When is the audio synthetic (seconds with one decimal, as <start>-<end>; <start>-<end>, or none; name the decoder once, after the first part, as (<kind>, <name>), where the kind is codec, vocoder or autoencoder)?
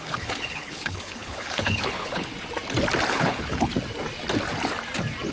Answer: 0.0-2.3 (codec, HILCodec); 3.1-3.7